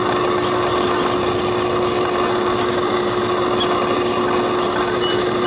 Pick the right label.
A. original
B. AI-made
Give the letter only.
A